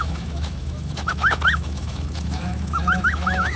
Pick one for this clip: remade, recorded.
remade